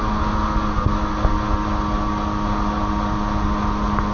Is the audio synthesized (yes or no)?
no